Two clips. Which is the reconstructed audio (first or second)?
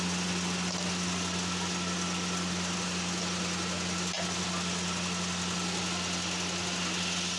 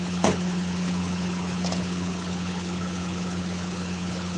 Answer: second